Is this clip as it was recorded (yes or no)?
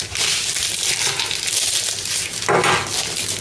yes